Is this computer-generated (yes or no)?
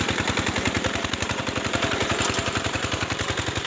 yes